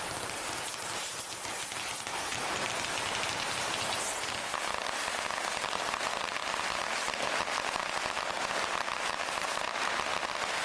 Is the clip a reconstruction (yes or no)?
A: no